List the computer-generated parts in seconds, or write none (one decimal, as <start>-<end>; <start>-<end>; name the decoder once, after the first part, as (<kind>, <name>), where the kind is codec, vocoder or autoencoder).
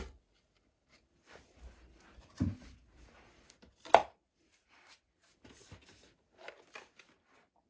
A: 4.0-5.3 (vocoder, BigVGAN v2)